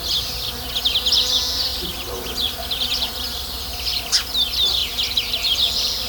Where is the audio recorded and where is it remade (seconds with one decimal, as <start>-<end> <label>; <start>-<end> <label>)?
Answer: 0.0-1.7 recorded; 1.7-4.0 remade; 4.0-4.8 recorded; 4.8-5.3 remade; 5.3-6.1 recorded